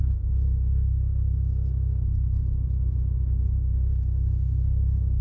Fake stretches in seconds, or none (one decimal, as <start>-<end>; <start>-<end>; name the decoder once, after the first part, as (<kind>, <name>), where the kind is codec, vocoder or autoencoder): 0.0-2.4 (codec, SNAC); 3.4-5.2